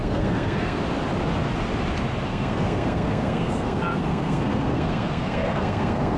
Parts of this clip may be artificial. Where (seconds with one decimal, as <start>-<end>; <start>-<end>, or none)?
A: 0.0-0.8; 2.3-6.2